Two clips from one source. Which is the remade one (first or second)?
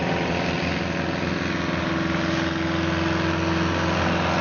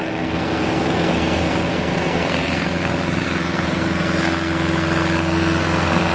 second